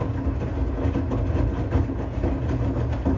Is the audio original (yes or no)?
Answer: yes